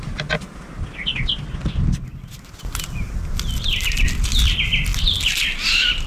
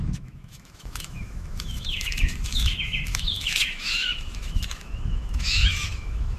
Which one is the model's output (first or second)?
second